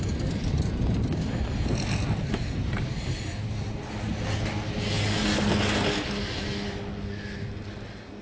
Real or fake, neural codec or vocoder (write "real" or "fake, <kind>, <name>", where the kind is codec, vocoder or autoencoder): real